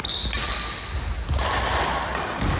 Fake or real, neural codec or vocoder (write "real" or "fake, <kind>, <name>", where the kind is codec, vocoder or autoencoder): real